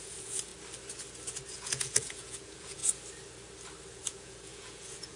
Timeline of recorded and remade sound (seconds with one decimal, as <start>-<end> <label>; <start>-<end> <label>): 0.0-0.5 remade; 0.5-1.5 recorded; 1.5-2.8 remade; 2.8-3.9 recorded; 3.9-5.2 remade